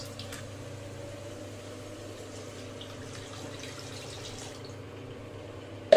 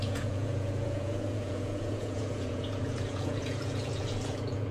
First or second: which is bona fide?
first